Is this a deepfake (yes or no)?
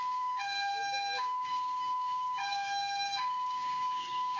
yes